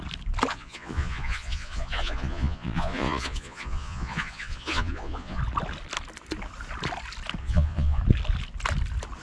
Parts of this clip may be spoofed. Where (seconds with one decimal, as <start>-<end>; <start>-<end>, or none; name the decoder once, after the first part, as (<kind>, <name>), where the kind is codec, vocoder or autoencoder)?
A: 0.5-5.4 (vocoder, Vocos); 7.4-8.0

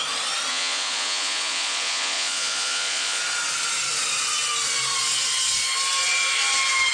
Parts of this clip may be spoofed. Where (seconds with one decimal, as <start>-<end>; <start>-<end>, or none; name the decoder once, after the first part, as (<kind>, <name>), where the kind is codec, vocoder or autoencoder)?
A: 0.5-3.2 (vocoder, Vocos)

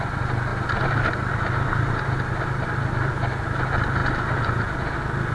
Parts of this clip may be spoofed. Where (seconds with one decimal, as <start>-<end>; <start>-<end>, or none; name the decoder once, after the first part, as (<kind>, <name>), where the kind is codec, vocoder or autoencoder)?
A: none

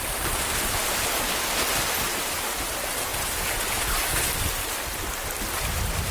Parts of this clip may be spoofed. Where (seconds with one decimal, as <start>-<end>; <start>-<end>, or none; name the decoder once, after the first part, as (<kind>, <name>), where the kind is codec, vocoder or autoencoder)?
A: 3.1-3.9 (vocoder, Vocos)

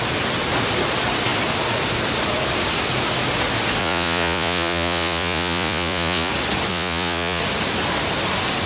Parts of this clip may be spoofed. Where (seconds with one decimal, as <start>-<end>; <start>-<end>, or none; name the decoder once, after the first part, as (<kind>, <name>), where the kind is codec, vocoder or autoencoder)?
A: 3.8-6.3 (vocoder, Vocos); 6.7-7.4

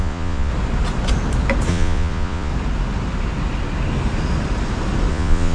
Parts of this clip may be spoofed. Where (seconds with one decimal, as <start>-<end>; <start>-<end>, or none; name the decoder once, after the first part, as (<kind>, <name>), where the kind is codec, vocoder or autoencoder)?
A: 0.0-0.5 (vocoder, Vocos); 1.7-2.5; 5.1-5.5